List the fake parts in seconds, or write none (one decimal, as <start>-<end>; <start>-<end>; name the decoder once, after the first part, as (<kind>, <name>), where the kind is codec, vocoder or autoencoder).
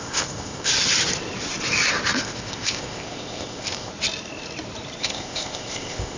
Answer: 0.0-0.7 (codec, ZipCodec); 2.2-3.9; 5.0-6.2